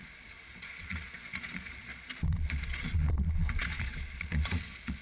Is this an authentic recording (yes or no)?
no